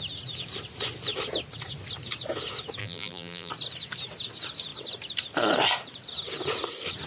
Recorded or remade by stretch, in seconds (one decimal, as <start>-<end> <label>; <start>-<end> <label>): 0.0-2.8 recorded; 2.8-3.5 remade; 3.5-7.1 recorded